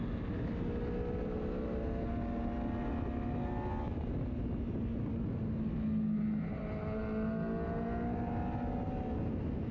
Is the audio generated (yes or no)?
no